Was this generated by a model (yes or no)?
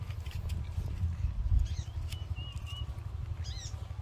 no